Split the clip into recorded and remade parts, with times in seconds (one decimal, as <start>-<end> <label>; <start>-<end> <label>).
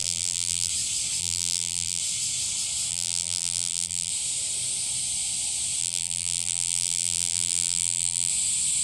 0.0-0.7 remade; 0.7-1.2 recorded; 1.2-2.0 remade; 2.0-2.9 recorded; 2.9-4.1 remade; 4.1-5.8 recorded; 5.8-8.3 remade; 8.3-8.8 recorded